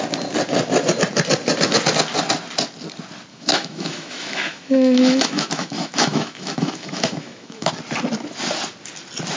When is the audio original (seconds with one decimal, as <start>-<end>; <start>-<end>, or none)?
0.0-3.3; 7.7-9.4